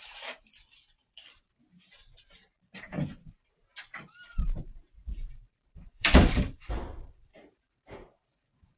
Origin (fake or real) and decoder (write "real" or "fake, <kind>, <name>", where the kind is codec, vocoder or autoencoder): fake, vocoder, BigVGAN v2